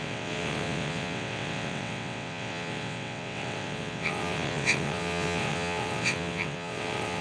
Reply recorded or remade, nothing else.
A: remade